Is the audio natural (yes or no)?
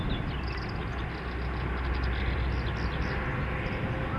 yes